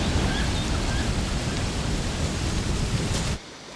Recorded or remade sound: recorded